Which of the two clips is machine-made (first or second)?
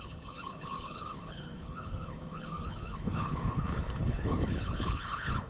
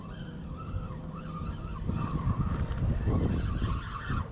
first